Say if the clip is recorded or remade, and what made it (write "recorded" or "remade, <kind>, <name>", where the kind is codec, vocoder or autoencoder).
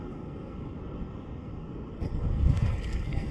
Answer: remade, codec, SNAC